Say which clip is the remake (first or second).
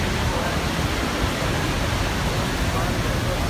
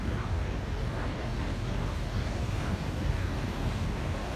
second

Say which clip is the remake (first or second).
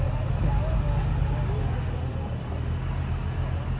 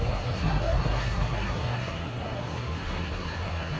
second